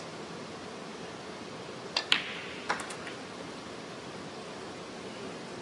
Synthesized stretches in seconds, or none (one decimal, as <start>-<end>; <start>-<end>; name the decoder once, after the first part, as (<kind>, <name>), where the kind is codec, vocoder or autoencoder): 0.9-4.2 (vocoder, BigVGAN v2)